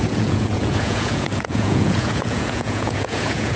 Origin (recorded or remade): remade